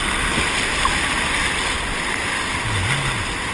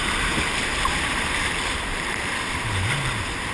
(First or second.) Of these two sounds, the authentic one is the first